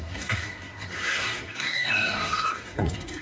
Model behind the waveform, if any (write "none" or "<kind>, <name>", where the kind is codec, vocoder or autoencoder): codec, SNAC